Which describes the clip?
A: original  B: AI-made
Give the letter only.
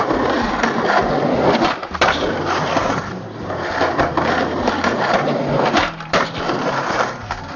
B